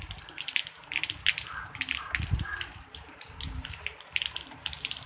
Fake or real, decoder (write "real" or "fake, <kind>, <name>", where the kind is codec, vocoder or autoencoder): fake, vocoder, BigVGAN v2